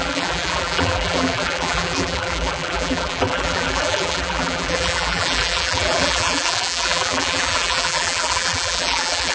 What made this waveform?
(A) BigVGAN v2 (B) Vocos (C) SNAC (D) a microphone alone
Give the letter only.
A